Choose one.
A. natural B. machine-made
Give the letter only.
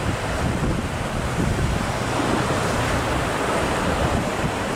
A